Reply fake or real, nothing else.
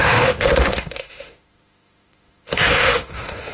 fake